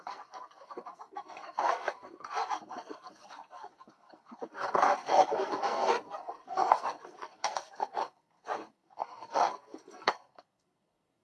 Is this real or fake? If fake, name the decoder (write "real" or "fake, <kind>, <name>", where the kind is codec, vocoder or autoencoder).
fake, codec, SNAC